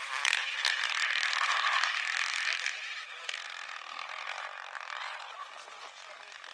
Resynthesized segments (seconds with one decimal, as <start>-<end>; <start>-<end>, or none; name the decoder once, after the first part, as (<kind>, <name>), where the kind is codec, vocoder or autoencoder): 5.0-5.5 (vocoder, Vocos)